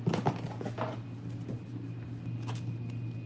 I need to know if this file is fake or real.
real